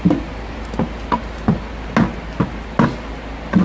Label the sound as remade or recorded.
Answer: recorded